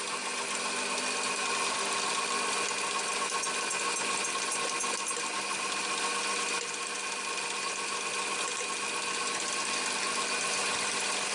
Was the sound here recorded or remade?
recorded